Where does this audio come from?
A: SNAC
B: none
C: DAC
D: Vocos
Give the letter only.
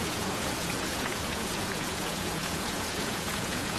D